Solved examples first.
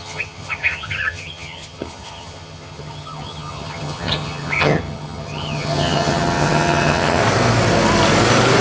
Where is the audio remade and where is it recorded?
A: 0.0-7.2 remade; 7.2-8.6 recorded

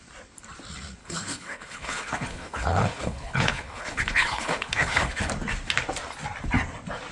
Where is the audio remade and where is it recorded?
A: 0.0-1.0 recorded; 1.0-5.3 remade; 5.3-7.1 recorded

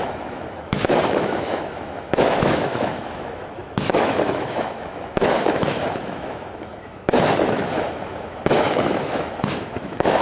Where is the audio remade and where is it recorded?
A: 0.0-10.2 remade

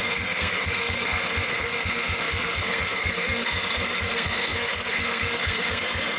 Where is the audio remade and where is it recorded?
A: 0.0-6.2 remade

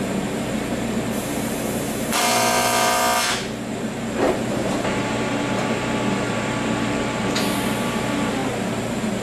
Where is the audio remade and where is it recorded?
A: 0.0-3.0 remade; 3.0-3.7 recorded; 3.7-9.2 remade

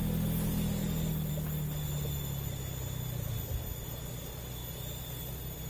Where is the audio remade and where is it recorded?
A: 0.0-5.7 recorded

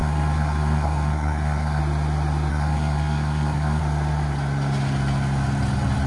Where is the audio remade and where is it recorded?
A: 0.0-1.8 remade; 1.8-2.5 recorded; 2.5-3.8 remade; 3.8-6.1 recorded